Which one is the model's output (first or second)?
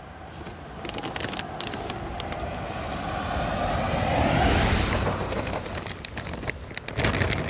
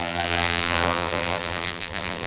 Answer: second